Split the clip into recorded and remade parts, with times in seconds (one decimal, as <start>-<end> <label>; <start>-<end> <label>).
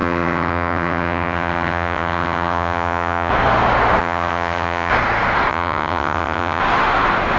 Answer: 0.0-3.3 remade; 3.3-4.0 recorded; 4.0-4.9 remade; 4.9-5.5 recorded; 5.5-6.6 remade; 6.6-7.4 recorded